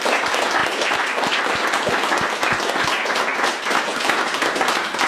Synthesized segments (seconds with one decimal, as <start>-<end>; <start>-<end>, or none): 0.6-1.4; 3.3-3.8